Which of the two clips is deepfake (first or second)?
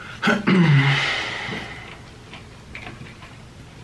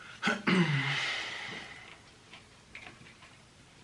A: second